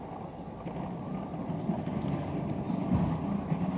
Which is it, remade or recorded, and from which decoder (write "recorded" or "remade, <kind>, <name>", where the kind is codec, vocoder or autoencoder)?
recorded